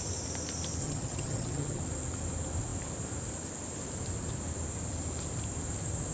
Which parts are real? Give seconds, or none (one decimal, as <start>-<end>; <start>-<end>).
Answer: 0.0-0.8; 1.8-6.1